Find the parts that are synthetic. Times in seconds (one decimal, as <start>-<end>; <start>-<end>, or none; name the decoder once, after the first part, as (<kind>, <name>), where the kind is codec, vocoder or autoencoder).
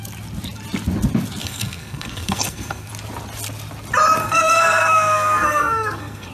1.4-2.9 (codec, SNAC); 4.2-6.3